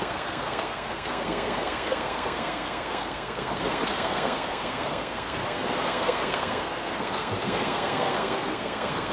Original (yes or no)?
no